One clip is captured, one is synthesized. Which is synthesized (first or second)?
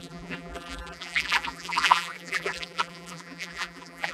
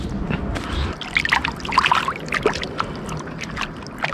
first